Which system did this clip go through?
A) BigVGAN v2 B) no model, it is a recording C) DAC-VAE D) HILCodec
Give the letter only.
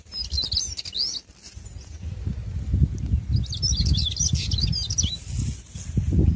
B